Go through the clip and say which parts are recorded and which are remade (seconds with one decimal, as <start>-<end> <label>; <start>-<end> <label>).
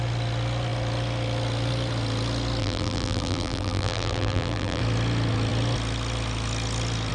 0.0-2.6 recorded; 2.6-4.8 remade; 4.8-7.1 recorded